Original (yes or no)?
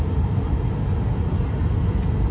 yes